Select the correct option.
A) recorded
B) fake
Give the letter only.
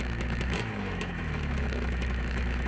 B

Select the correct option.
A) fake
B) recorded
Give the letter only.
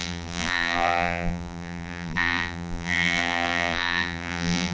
A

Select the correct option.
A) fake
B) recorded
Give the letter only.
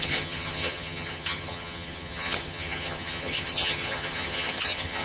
A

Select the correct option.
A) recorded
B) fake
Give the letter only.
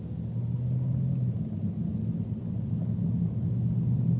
A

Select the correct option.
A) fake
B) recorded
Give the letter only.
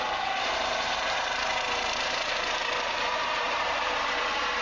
A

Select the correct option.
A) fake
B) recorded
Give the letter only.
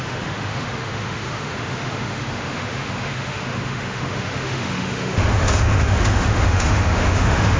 A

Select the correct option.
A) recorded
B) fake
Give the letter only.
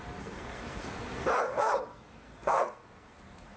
B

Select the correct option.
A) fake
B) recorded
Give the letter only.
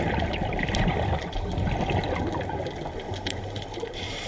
B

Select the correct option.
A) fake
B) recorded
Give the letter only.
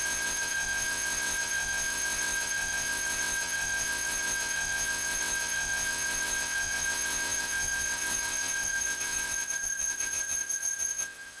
A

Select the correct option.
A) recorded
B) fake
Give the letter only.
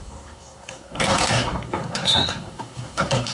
B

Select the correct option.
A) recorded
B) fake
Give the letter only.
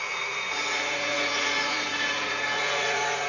B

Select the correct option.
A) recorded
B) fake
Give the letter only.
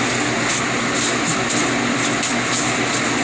A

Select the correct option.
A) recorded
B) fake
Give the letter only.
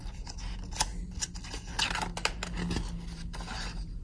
A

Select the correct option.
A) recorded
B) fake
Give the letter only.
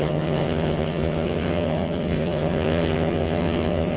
B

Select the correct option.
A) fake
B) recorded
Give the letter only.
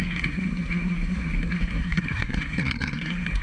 A